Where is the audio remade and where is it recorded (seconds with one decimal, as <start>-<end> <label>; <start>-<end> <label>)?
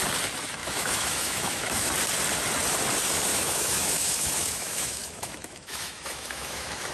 0.0-0.6 recorded; 0.6-1.9 remade; 1.9-3.3 recorded; 3.3-6.9 remade